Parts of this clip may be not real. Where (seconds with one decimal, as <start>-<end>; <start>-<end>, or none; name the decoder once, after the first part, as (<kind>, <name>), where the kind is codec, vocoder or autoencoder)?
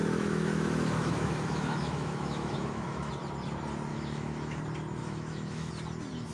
0.0-3.1 (autoencoder, DAC-VAE); 3.9-4.6; 5.0-5.7